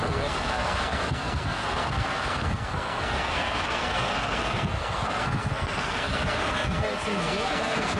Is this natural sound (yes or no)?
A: no